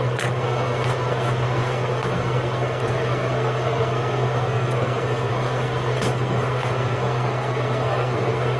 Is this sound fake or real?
fake